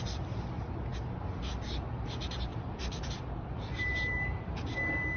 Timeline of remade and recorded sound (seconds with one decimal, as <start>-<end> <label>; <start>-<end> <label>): 0.0-2.5 recorded; 2.5-4.4 remade; 4.4-5.2 recorded